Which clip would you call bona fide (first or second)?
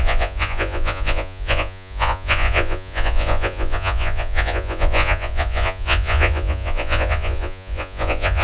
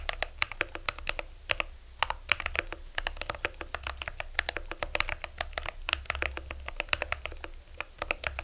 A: second